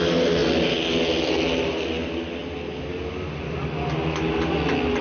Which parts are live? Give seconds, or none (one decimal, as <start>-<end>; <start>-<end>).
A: 0.0-5.0